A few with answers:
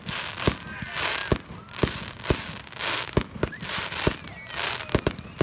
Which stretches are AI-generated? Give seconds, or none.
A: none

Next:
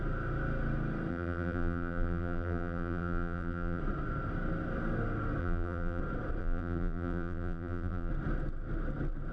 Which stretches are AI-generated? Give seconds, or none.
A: 1.1-3.8 (vocoder, BigVGAN v2); 5.4-6.0; 6.4-8.1

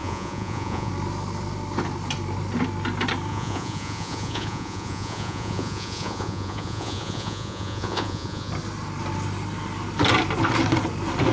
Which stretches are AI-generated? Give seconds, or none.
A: 0.0-0.9 (vocoder, Vocos); 3.3-8.5

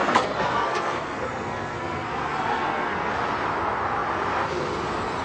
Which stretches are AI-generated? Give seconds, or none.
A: 0.0-3.1 (codec, SNAC)

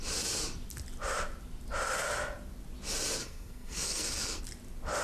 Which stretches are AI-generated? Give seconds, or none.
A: 3.2-4.4 (codec, SNAC)

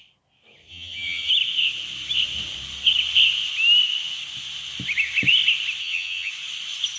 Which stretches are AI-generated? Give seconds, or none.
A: 0.7-1.3 (vocoder, HiFi-GAN); 5.8-6.3

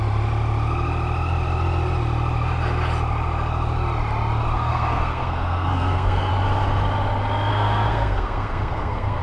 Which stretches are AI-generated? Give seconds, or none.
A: 4.5-6.3 (codec, SNAC); 7.5-9.2

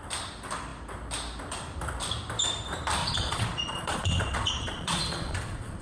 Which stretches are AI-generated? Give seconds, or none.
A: 3.0-5.8 (vocoder, Vocos)